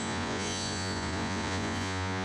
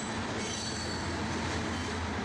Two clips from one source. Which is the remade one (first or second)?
first